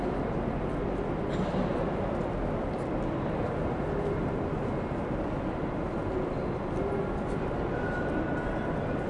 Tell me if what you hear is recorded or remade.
recorded